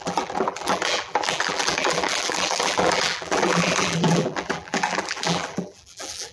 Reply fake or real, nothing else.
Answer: fake